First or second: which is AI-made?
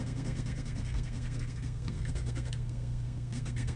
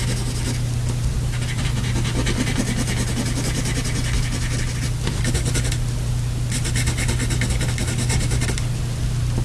first